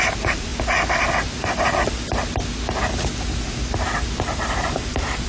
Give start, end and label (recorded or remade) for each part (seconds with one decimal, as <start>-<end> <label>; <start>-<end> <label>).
0.0-0.5 remade; 0.5-3.7 recorded; 3.7-5.3 remade